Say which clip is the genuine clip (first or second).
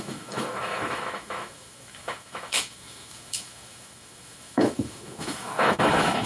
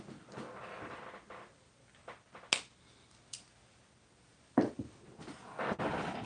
second